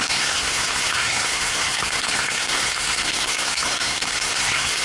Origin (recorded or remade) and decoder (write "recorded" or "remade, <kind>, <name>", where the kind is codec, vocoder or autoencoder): remade, codec, SNAC